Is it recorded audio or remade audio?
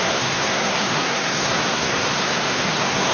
remade